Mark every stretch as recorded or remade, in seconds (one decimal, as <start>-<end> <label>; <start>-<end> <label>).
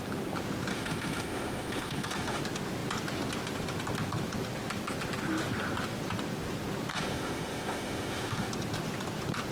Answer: 0.0-0.7 recorded; 0.7-2.4 remade; 2.4-6.9 recorded; 6.9-8.5 remade; 8.5-9.5 recorded